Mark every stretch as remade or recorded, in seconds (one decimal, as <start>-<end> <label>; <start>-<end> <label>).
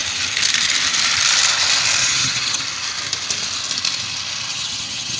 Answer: 0.0-2.0 recorded; 2.0-2.6 remade; 2.6-4.5 recorded; 4.5-5.2 remade